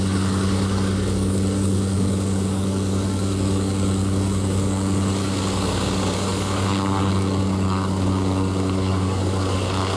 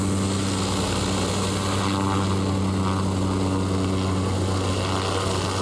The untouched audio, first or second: second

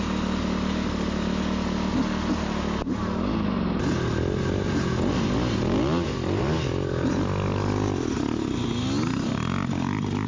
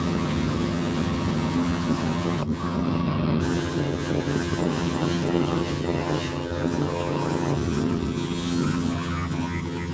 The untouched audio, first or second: first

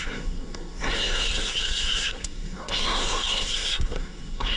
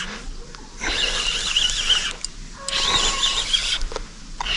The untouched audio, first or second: second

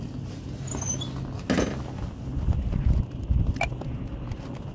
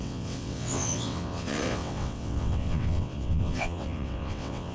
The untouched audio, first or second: first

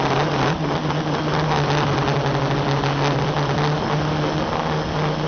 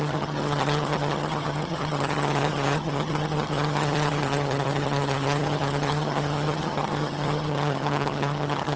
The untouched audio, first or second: first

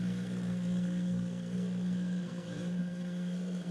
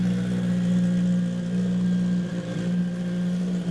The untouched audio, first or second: second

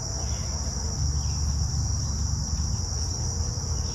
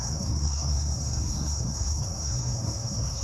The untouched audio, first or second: first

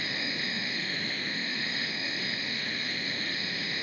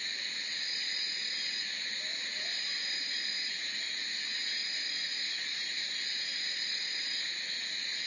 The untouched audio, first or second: second